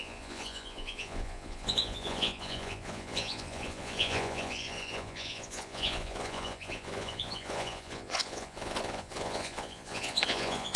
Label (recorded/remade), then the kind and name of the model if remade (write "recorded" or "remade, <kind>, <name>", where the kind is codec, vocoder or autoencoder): remade, vocoder, Vocos